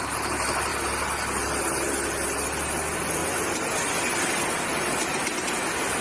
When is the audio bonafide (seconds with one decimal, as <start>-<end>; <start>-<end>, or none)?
0.7-2.7; 3.2-4.2